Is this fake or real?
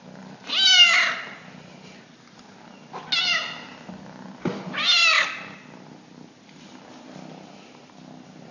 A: real